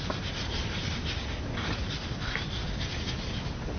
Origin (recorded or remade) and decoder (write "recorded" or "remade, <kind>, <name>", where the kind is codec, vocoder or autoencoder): recorded